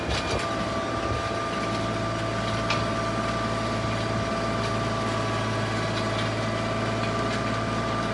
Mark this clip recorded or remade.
recorded